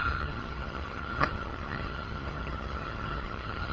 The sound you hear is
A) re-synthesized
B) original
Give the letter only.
A